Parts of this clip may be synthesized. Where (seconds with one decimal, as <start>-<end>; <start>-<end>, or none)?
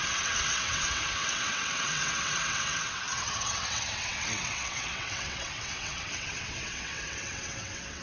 0.0-8.0